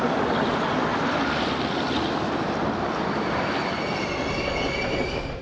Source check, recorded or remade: recorded